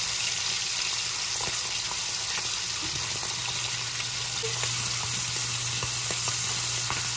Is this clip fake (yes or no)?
no